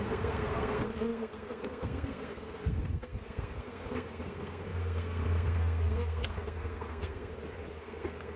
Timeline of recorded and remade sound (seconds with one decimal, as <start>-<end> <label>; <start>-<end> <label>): 0.0-7.3 remade; 7.3-7.8 recorded; 7.8-8.4 remade